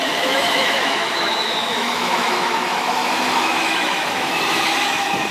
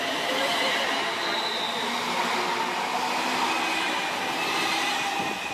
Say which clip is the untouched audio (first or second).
second